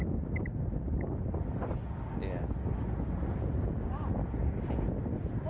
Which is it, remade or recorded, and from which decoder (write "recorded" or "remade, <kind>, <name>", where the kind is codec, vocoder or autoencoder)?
recorded